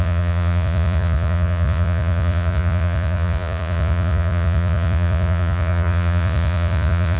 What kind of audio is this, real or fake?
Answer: fake